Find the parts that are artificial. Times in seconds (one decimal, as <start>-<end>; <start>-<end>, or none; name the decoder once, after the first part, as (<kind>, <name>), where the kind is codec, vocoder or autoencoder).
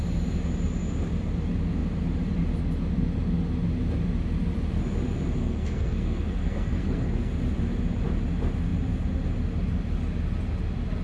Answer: 5.4-7.3 (codec, SNAC)